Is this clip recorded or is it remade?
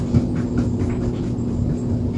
recorded